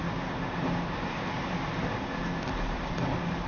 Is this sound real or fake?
real